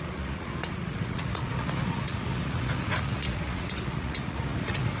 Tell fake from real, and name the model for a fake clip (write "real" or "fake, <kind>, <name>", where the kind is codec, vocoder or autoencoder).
fake, vocoder, Vocos